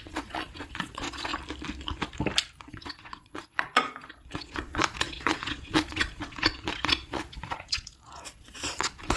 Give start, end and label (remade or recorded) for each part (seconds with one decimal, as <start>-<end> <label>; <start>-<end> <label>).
0.0-1.3 remade; 1.3-2.7 recorded; 2.7-9.2 remade